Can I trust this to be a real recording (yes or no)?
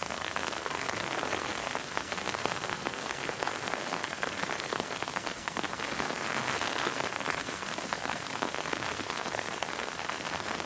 no